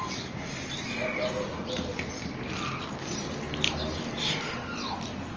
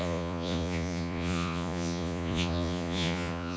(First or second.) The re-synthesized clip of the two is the second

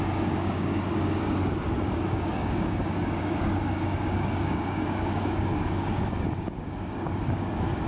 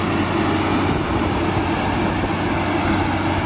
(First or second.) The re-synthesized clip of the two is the first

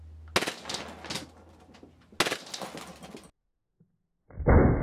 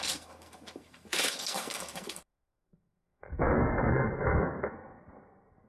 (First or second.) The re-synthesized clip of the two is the second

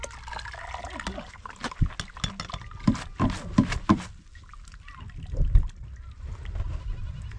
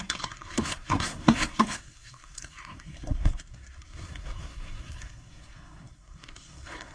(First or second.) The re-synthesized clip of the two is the second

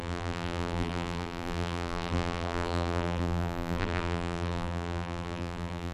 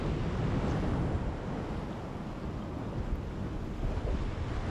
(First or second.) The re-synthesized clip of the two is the first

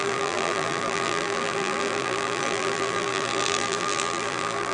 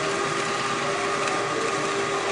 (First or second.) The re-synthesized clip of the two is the first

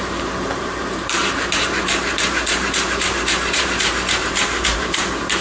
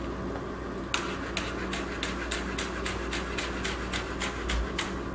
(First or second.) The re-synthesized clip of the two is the first